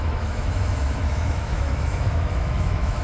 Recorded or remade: remade